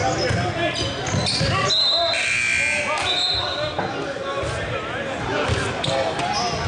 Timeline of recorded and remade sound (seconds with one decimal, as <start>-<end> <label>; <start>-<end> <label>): 0.0-6.7 recorded